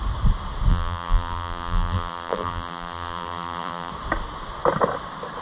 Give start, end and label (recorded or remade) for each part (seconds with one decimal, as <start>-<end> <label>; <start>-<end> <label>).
0.0-0.7 recorded; 0.7-3.9 remade; 3.9-5.4 recorded